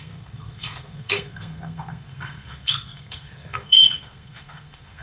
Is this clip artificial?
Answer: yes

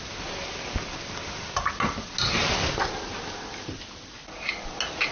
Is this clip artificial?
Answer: no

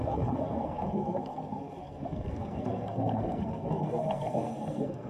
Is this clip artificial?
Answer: yes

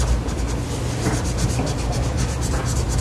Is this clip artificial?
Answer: no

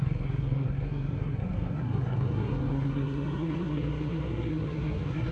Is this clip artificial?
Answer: yes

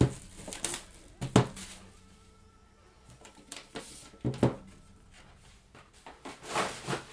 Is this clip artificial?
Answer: no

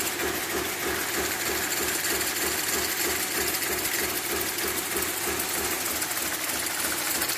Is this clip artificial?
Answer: no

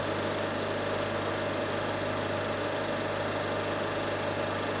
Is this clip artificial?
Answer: no